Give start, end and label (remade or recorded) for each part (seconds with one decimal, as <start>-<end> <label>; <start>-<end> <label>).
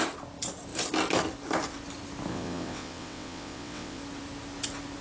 0.0-2.3 recorded; 2.3-4.0 remade; 4.0-5.0 recorded